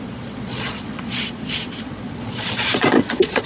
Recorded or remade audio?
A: remade